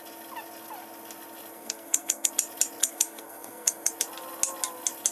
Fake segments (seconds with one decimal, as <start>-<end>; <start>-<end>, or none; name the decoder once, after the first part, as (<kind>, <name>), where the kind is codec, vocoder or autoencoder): 1.5-2.3 (codec, SNAC); 2.8-3.9